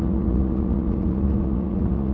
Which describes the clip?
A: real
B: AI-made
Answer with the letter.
B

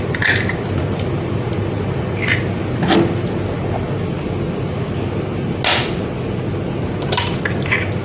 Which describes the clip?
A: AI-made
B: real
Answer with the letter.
B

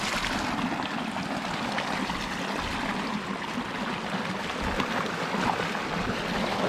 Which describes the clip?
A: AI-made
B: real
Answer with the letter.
B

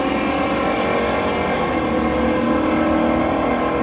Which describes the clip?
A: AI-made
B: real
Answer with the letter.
B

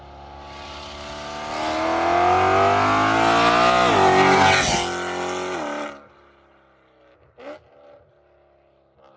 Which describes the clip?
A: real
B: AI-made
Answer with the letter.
A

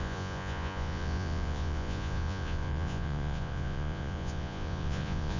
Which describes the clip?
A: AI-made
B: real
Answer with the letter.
A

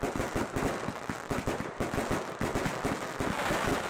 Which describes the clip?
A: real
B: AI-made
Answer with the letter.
A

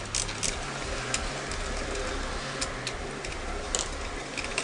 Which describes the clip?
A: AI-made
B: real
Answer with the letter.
B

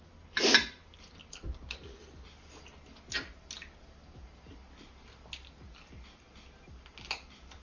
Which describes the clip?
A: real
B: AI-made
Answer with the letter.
A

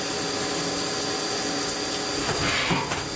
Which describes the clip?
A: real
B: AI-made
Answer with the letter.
A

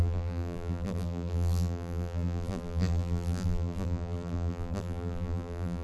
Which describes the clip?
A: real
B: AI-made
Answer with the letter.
B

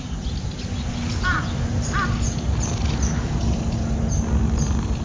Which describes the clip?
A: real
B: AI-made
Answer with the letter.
A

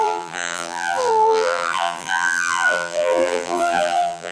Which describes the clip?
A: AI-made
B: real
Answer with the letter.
A